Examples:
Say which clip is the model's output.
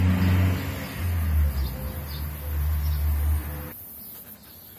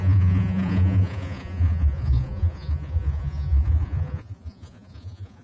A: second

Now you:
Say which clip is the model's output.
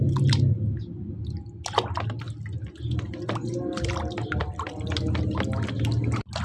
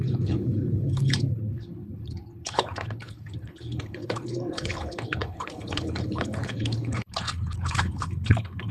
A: second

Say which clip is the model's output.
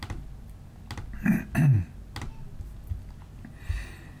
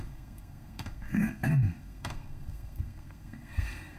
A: second